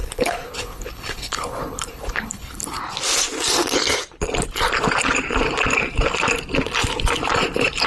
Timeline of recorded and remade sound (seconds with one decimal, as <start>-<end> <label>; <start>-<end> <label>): 0.0-2.8 remade; 2.8-7.9 recorded